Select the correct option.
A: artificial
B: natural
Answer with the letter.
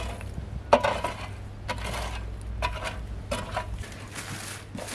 B